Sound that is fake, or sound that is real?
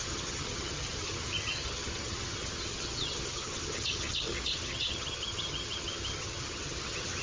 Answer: fake